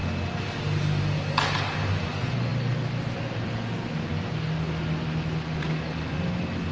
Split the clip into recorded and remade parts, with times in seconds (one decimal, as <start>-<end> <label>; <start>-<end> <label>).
0.0-6.7 recorded